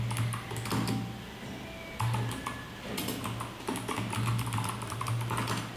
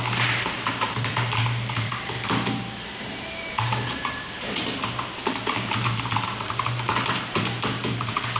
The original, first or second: first